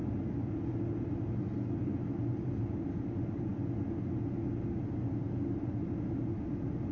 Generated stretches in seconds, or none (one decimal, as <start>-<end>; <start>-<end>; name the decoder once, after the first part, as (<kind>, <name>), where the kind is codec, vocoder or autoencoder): none